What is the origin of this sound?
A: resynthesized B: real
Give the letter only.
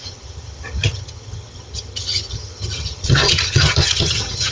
A